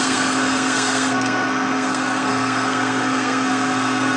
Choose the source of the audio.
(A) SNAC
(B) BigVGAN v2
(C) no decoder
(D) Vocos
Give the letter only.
A